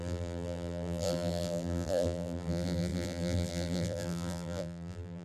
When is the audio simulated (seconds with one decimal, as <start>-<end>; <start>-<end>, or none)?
0.0-5.2